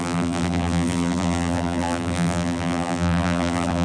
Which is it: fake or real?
fake